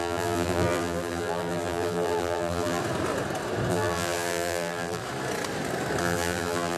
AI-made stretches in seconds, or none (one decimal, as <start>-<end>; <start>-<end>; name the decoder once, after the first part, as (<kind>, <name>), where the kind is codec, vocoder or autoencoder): 0.0-2.8 (vocoder, BigVGAN v2); 3.7-5.0; 6.0-6.8

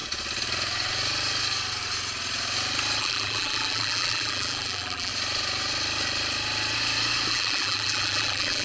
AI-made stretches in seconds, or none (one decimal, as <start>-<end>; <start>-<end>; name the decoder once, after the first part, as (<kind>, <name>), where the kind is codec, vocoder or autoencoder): 3.0-5.1 (vocoder, BigVGAN v2); 7.3-8.6

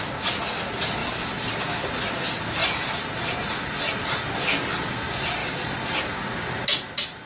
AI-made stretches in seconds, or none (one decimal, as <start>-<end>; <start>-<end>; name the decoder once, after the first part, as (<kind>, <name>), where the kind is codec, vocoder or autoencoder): 2.6-3.6 (vocoder, BigVGAN v2); 5.4-6.0

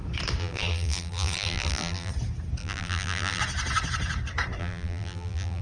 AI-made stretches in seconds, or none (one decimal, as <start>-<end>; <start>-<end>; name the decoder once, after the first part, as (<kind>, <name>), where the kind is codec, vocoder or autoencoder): 0.4-2.1 (vocoder, BigVGAN v2); 2.6-3.4; 4.6-5.6

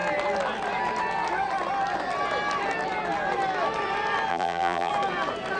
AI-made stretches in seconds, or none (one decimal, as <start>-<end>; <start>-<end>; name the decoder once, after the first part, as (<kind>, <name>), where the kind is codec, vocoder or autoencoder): 4.3-4.9 (vocoder, BigVGAN v2)

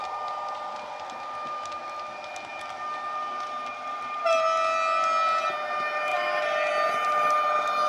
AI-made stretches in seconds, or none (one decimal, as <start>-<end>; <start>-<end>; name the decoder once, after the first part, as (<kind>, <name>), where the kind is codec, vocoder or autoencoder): 2.5-4.2 (vocoder, BigVGAN v2); 6.1-6.7

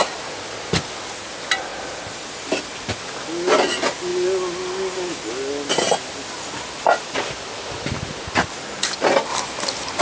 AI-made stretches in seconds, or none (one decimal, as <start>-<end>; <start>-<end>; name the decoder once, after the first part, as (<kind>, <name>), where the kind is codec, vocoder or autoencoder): 1.7-3.0 (vocoder, BigVGAN v2); 4.1-5.3; 9.3-10.0